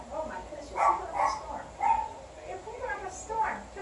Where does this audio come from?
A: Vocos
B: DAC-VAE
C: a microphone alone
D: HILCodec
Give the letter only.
C